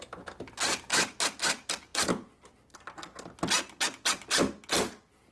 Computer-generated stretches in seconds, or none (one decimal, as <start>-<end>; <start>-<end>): none

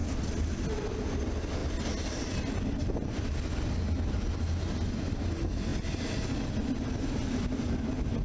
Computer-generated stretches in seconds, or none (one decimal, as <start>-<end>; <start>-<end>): none

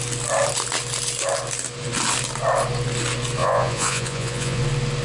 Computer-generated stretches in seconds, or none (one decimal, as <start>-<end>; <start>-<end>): 3.4-4.6